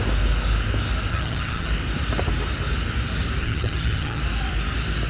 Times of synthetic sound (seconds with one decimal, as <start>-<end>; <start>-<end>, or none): 1.1-1.7; 3.4-4.2